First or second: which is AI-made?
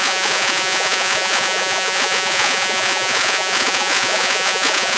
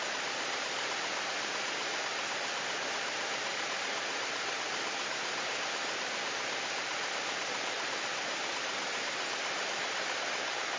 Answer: first